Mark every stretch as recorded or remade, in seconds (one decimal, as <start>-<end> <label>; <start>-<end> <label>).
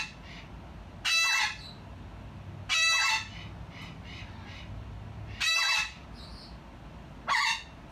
0.0-7.9 recorded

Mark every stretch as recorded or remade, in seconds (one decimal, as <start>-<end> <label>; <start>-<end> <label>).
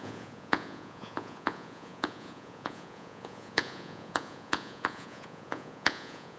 0.0-6.4 remade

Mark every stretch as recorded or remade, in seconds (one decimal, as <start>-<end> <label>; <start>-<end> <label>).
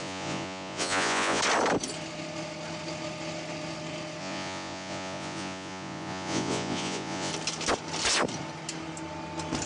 0.0-1.4 remade; 1.4-4.2 recorded; 4.2-7.3 remade; 7.3-9.7 recorded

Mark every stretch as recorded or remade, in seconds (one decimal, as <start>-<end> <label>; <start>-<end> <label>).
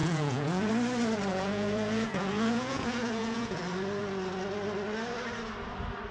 0.0-0.7 remade; 0.7-1.3 recorded; 1.3-3.6 remade; 3.6-6.1 recorded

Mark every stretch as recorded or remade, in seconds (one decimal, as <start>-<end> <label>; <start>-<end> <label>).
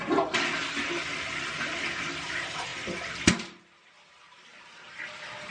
0.0-5.5 recorded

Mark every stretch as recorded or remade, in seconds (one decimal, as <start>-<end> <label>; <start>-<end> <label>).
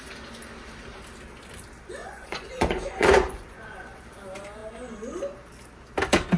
0.0-2.0 recorded; 2.0-4.0 remade; 4.0-6.4 recorded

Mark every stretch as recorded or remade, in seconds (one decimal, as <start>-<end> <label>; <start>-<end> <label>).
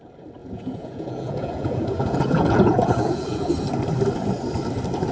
0.0-0.4 recorded; 0.4-3.5 remade; 3.5-5.1 recorded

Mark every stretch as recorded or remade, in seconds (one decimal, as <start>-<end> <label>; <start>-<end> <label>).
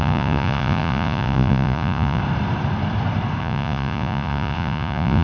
0.0-2.2 remade; 2.2-3.4 recorded; 3.4-5.2 remade